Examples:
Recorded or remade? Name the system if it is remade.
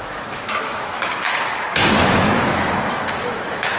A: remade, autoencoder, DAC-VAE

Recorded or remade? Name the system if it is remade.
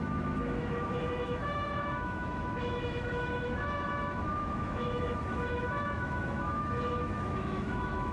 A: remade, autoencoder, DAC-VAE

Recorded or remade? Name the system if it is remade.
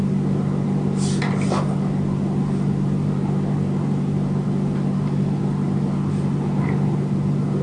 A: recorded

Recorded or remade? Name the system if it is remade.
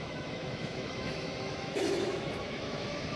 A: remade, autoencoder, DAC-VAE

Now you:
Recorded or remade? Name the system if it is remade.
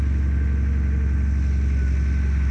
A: recorded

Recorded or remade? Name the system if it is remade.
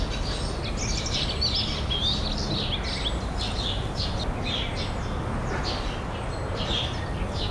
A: recorded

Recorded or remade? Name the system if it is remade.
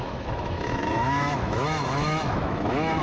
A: remade, autoencoder, DAC-VAE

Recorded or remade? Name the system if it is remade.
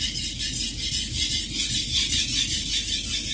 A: recorded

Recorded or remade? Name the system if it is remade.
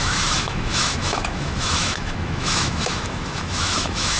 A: remade, autoencoder, DAC-VAE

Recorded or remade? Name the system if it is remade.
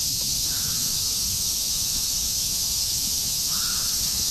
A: remade, autoencoder, DAC-VAE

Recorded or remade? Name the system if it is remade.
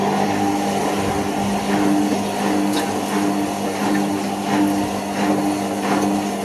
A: recorded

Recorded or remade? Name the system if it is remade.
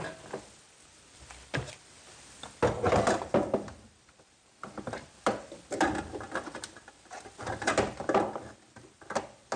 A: recorded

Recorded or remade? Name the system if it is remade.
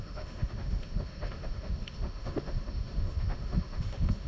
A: remade, autoencoder, DAC-VAE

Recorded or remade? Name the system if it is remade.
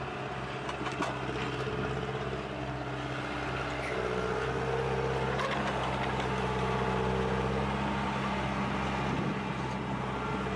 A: recorded